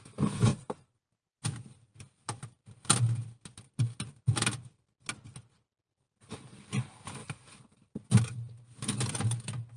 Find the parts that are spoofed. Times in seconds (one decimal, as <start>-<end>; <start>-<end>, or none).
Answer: 0.5-1.0; 7.2-8.1